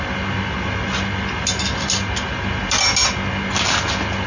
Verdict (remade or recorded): recorded